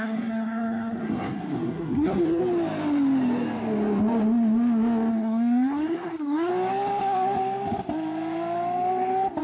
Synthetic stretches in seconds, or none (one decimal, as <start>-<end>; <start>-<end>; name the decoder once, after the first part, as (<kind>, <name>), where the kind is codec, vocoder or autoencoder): 0.0-2.4 (codec, SNAC); 5.1-6.5